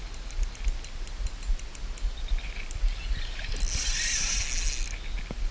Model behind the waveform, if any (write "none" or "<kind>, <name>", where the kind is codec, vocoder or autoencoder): none